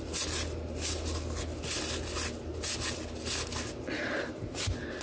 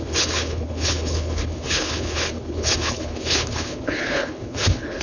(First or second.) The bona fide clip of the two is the first